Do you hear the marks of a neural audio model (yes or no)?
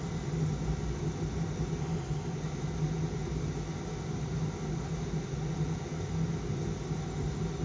no